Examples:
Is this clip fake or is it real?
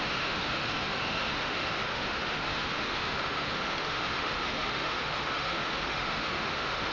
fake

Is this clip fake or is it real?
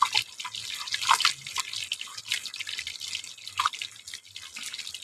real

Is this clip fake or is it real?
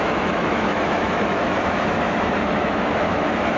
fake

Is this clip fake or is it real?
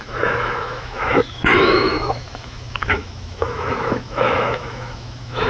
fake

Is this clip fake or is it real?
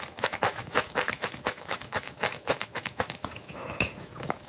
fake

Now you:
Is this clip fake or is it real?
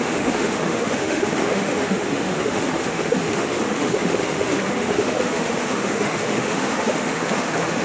fake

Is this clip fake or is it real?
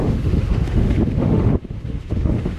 fake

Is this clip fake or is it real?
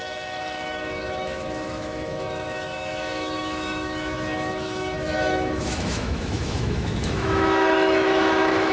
fake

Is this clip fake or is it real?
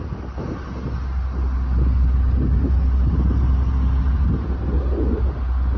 real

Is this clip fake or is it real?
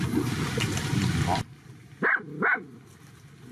real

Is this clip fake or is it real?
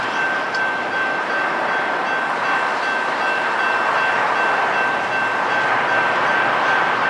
real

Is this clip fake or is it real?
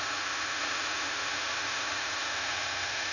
fake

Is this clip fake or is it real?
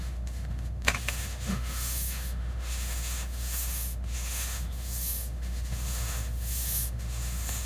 fake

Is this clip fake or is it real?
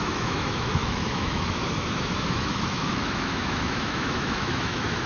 fake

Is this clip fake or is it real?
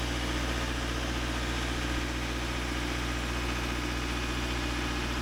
real